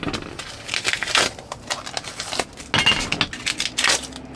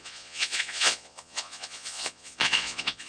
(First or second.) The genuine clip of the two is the first